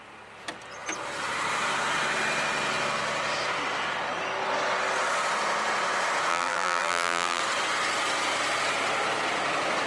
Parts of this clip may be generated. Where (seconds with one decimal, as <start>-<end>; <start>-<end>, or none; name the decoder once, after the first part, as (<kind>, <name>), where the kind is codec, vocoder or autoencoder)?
6.3-7.4 (vocoder, BigVGAN v2)